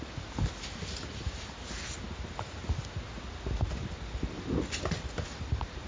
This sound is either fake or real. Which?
real